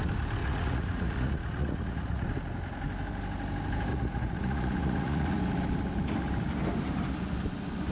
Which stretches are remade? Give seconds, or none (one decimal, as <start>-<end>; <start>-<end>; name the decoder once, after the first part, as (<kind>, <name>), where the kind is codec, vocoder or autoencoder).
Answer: 0.4-2.3 (vocoder, Vocos); 3.9-5.4